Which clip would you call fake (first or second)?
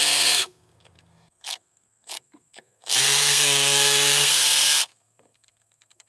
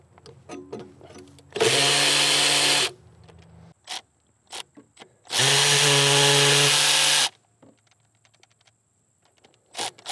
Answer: first